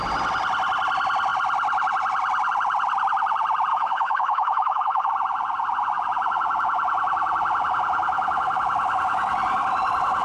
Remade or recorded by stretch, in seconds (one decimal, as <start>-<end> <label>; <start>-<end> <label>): 0.0-3.7 recorded; 3.7-5.1 remade; 5.1-10.2 recorded

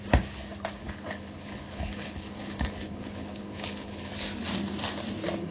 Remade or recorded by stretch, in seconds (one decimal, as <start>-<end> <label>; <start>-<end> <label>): 0.0-0.8 recorded; 0.8-4.1 remade; 4.1-5.5 recorded

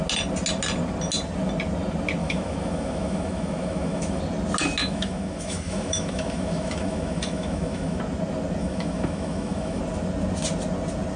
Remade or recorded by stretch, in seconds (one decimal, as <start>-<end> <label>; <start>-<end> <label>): 0.0-2.2 recorded; 2.2-4.2 remade; 4.2-4.8 recorded; 4.8-8.0 remade; 8.0-8.6 recorded; 8.6-9.8 remade; 9.8-11.2 recorded

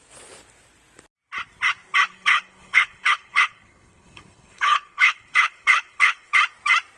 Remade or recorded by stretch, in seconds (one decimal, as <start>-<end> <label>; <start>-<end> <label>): 0.0-2.1 recorded; 2.1-6.3 remade; 6.3-7.0 recorded

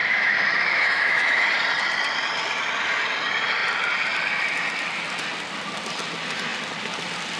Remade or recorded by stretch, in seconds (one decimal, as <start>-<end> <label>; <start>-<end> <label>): 0.0-1.5 remade; 1.5-7.4 recorded